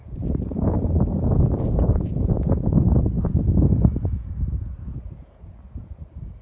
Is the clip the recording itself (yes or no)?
no